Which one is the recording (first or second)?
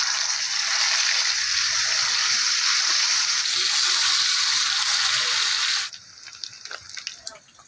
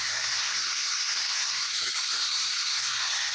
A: first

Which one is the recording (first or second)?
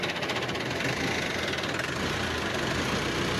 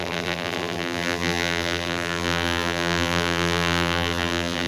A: first